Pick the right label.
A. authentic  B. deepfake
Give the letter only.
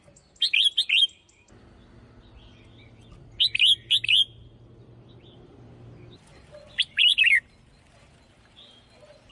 A